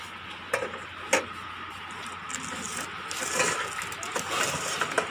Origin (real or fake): real